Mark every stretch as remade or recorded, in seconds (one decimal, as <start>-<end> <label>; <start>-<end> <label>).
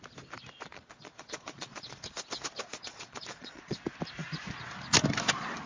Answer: 0.0-0.7 recorded; 0.7-2.0 remade; 2.0-2.7 recorded; 2.7-3.8 remade; 3.8-5.7 recorded